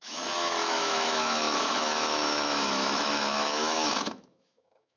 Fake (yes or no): yes